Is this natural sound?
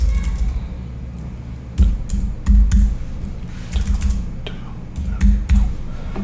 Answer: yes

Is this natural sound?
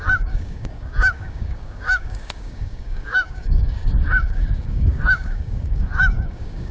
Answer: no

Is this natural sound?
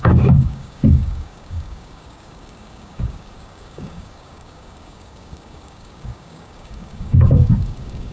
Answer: no